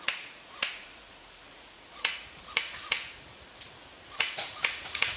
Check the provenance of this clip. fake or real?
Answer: fake